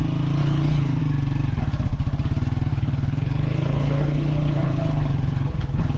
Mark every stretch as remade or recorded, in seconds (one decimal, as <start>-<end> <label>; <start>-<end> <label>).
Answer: 0.0-0.4 recorded; 0.4-1.0 remade; 1.0-2.7 recorded; 2.7-6.0 remade